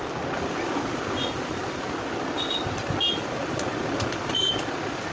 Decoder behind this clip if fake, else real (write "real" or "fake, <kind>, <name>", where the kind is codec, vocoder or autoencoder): real